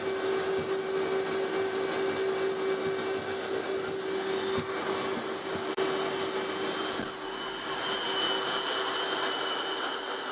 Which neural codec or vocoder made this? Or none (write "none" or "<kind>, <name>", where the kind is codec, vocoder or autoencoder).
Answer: none